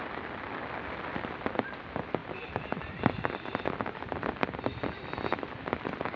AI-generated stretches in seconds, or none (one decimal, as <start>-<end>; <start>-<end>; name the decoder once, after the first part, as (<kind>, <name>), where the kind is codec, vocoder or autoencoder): none